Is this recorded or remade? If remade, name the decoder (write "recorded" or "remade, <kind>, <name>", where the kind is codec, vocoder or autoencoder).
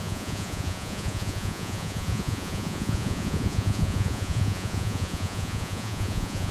remade, vocoder, Vocos